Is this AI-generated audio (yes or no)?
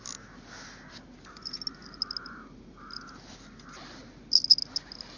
no